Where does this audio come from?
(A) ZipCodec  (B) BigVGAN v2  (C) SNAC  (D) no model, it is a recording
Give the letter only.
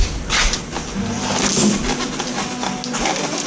D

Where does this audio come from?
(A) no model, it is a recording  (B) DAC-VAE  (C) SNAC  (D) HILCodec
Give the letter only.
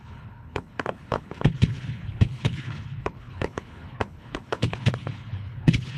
D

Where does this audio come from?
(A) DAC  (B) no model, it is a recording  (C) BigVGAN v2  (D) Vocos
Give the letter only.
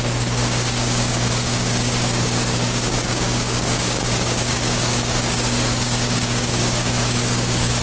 A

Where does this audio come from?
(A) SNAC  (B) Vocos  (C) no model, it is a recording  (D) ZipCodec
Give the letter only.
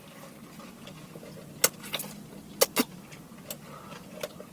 C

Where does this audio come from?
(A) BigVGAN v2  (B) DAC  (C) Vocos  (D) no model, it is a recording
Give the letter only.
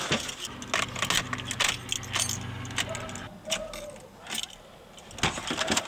D